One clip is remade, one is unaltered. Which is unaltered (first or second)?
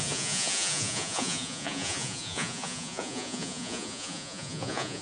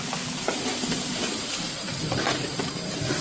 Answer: second